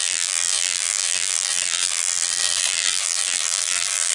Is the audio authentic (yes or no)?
no